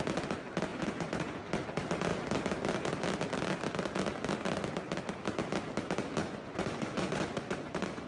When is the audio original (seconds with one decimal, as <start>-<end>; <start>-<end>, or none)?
0.0-0.7; 1.4-6.2